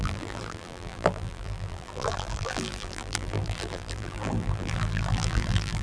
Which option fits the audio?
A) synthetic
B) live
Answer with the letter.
A